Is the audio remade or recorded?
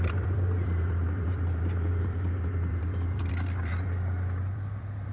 remade